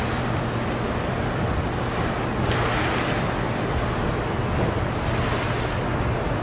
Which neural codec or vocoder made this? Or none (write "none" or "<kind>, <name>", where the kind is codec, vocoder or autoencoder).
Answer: none